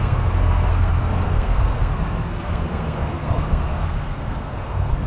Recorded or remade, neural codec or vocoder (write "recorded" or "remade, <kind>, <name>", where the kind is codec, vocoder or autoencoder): remade, codec, SNAC